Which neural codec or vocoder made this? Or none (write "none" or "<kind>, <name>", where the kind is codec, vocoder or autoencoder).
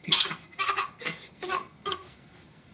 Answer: codec, SNAC